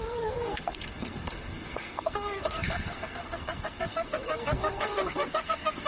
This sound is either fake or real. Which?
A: fake